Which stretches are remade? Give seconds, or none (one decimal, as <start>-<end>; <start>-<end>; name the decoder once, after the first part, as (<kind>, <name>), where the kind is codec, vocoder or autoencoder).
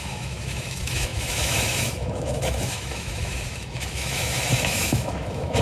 0.0-5.6 (autoencoder, DAC-VAE)